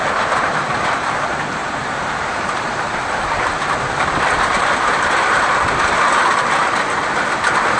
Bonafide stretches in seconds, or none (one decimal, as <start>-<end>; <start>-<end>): 0.0-1.6; 5.8-7.8